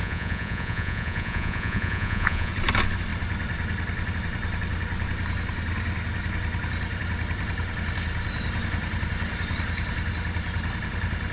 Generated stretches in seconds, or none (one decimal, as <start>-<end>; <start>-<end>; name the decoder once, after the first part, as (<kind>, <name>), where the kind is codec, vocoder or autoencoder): 0.0-2.5 (vocoder, Vocos)